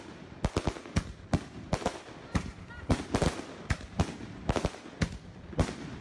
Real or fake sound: real